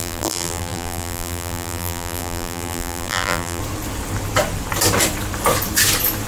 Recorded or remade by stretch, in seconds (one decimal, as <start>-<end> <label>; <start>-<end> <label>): 0.0-3.6 remade; 3.6-6.3 recorded